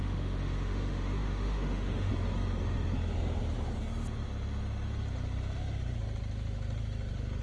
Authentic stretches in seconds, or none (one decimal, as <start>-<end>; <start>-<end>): 2.1-7.4